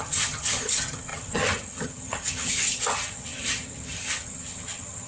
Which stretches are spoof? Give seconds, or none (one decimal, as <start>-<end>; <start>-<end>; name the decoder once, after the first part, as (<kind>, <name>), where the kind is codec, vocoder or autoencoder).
0.0-5.1 (vocoder, HiFi-GAN)